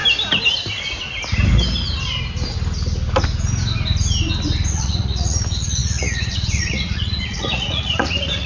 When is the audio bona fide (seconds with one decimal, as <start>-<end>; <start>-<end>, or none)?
0.0-4.7